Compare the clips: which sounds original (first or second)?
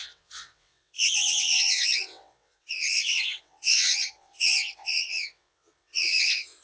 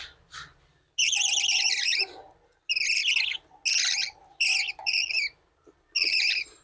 second